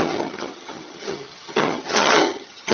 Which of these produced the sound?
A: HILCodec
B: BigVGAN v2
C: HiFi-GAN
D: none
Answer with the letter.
C